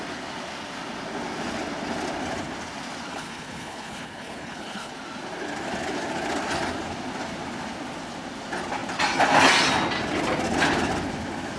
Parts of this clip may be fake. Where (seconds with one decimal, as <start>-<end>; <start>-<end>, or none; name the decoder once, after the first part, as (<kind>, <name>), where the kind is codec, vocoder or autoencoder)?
3.1-4.9 (codec, HILCodec)

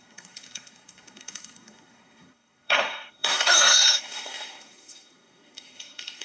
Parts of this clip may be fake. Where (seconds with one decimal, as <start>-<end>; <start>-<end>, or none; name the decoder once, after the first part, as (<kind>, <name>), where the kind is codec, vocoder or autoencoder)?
0.0-6.2 (codec, SNAC)

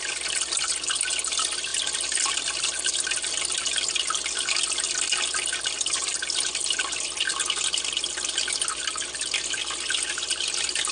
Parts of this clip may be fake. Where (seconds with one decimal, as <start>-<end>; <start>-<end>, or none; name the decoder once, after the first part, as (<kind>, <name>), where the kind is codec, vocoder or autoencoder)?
none